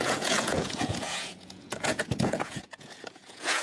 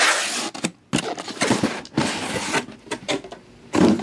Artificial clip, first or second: first